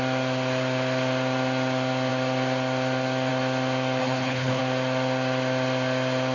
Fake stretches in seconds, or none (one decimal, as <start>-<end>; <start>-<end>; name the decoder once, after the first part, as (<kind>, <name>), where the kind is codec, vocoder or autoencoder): 4.0-4.6 (codec, HILCodec)